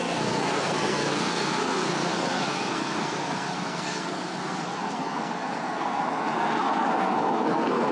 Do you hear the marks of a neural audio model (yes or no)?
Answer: yes